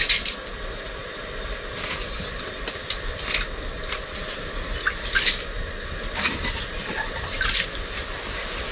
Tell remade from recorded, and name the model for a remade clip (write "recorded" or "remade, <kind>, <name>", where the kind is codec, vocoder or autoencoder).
recorded